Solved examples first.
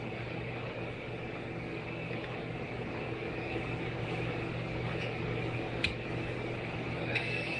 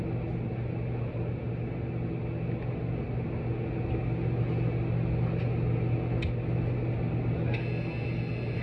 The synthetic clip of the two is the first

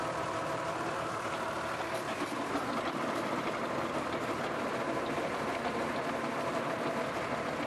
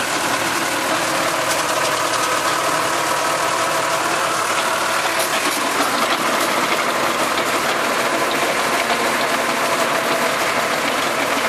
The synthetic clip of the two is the first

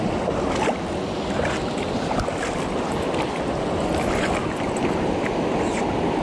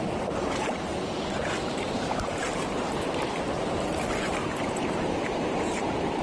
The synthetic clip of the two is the second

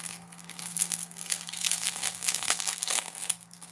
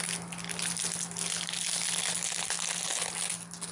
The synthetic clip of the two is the first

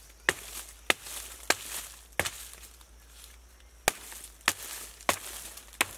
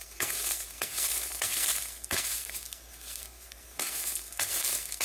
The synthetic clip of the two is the second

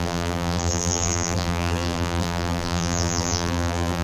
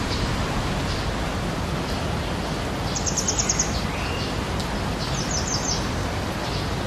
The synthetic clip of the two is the first